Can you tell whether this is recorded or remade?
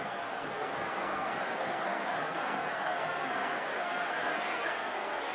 remade